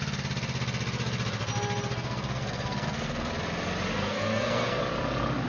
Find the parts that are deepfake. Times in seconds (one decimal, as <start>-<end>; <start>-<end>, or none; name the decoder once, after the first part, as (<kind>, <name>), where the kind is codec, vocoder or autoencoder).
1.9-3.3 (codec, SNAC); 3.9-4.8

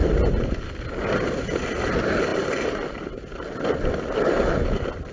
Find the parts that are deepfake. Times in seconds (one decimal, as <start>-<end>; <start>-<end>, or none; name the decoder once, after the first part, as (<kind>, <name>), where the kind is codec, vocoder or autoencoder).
none

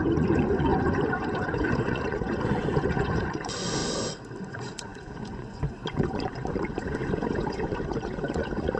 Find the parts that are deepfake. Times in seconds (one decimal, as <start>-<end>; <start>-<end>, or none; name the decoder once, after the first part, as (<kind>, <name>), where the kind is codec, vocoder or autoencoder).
0.0-3.8 (vocoder, Vocos); 4.5-8.8

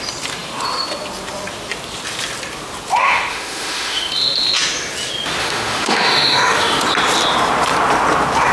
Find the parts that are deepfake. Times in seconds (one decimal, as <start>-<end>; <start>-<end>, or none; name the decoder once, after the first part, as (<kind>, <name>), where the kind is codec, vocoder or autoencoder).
3.3-4.1 (autoencoder, DAC-VAE); 5.4-6.8

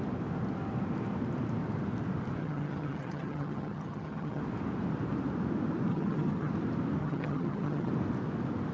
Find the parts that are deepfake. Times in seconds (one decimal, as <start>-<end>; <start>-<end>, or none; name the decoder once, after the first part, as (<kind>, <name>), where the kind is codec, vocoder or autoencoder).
2.4-4.4 (vocoder, HiFi-GAN); 5.9-6.5; 7.0-7.9

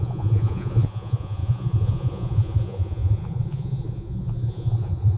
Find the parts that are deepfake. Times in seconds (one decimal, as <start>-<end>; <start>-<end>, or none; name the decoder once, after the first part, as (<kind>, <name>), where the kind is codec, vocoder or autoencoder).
0.0-5.2 (vocoder, Vocos)